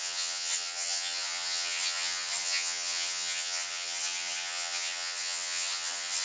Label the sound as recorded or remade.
remade